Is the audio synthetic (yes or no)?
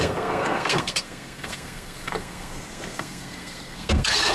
yes